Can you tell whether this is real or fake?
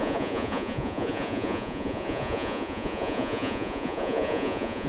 fake